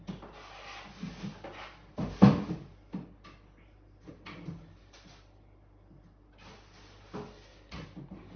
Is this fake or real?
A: real